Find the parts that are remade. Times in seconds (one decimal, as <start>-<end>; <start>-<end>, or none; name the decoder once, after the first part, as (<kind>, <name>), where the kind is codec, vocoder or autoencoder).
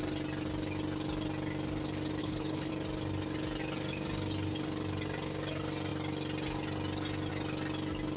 2.2-2.7 (codec, HILCodec)